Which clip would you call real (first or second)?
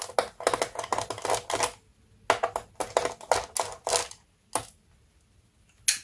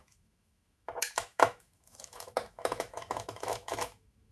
first